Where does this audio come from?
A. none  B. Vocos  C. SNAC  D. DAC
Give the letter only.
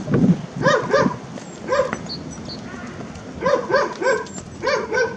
A